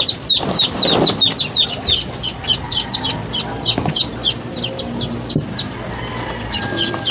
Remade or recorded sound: recorded